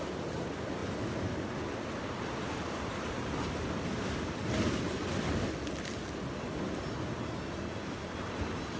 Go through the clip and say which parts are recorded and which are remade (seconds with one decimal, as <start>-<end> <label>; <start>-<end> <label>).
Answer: 0.0-8.8 recorded